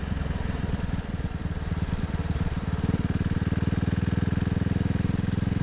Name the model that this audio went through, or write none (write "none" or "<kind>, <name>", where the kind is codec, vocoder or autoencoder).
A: none